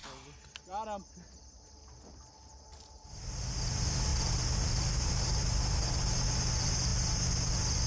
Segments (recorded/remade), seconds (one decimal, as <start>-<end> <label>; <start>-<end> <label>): 0.0-7.9 recorded